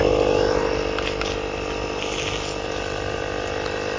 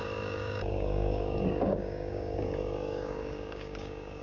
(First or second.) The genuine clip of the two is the first